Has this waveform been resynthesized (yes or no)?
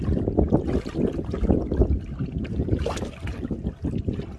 no